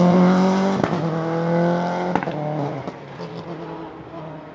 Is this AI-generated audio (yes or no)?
no